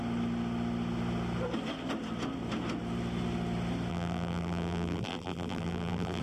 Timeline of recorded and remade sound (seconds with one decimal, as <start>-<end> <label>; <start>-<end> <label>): 0.0-3.9 recorded; 3.9-6.2 remade